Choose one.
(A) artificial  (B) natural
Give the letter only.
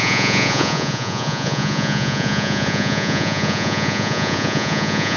A